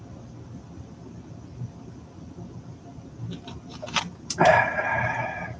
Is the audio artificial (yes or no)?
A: no